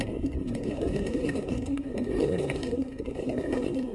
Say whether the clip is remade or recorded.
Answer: remade